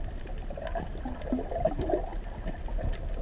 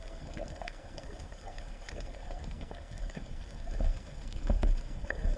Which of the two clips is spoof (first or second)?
second